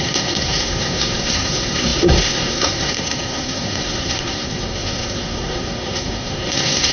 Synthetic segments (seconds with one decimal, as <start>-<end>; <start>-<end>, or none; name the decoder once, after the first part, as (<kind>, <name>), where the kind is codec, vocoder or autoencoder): 0.0-6.9 (codec, SNAC)